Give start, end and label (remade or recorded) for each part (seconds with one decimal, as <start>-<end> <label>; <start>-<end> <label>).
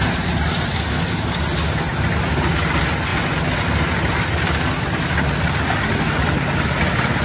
0.0-7.2 recorded